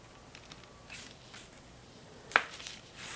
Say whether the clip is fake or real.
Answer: real